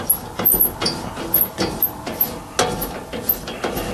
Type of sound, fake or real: real